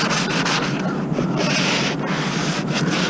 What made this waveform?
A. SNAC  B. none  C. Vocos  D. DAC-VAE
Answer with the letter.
B